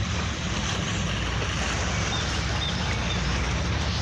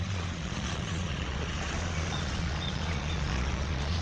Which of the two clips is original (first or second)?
first